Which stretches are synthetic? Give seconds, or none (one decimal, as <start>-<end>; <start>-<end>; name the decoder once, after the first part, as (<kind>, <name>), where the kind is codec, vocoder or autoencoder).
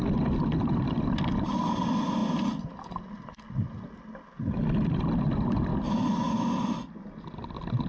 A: none